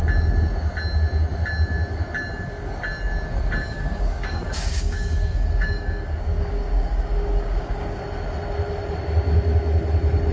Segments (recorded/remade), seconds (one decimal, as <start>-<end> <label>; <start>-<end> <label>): 0.0-3.6 recorded; 3.6-8.0 remade; 8.0-10.3 recorded